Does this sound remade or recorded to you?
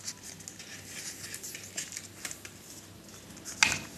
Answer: recorded